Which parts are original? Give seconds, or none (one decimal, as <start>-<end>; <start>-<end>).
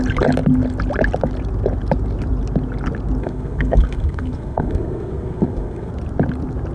0.0-3.2; 5.9-6.7